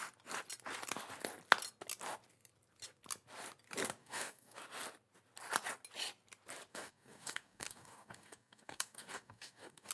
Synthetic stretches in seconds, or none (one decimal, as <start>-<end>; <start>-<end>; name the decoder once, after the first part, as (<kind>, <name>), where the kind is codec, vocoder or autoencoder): 4.0-4.6 (codec, DAC); 6.7-9.9